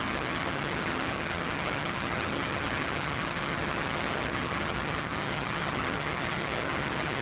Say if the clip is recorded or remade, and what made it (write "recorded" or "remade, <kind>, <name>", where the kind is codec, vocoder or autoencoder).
remade, vocoder, HiFi-GAN